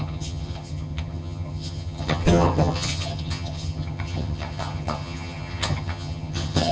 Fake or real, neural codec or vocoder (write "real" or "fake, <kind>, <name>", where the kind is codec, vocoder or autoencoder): fake, vocoder, HiFi-GAN